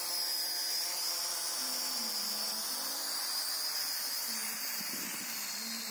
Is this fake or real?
real